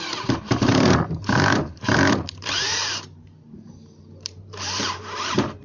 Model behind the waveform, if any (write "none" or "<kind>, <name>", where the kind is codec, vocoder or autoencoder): vocoder, BigVGAN v2